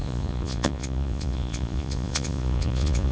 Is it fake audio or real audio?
fake